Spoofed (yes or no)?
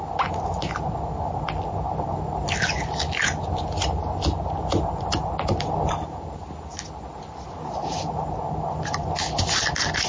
no